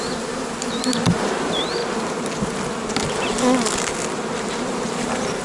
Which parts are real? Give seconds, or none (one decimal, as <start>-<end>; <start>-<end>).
1.8-5.0